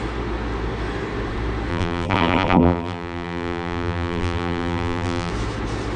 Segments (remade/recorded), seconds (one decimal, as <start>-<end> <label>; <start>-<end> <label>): 0.0-1.7 recorded; 1.7-5.3 remade; 5.3-6.0 recorded